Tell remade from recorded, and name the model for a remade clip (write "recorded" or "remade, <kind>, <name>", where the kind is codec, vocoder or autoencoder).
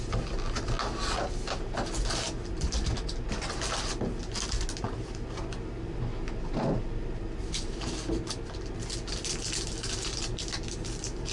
recorded